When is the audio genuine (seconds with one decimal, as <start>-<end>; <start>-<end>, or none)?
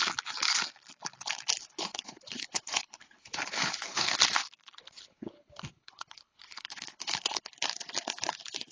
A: 0.0-1.6; 4.2-4.8; 7.5-8.7